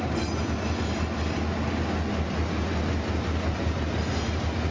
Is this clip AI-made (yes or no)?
no